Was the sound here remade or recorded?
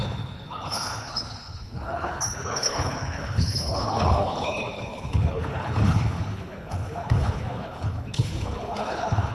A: remade